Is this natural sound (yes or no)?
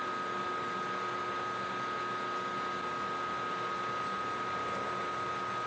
yes